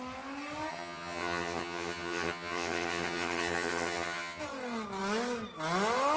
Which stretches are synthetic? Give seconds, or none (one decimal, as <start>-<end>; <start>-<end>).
0.7-4.4